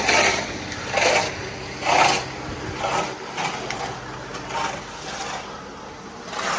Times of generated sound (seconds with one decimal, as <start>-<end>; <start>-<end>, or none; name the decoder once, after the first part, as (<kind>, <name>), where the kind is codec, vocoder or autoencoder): none